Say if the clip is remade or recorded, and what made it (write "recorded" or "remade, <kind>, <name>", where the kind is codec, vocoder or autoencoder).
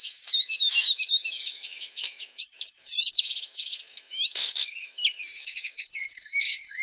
remade, autoencoder, DAC-VAE